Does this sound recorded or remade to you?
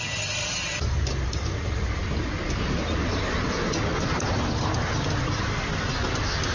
recorded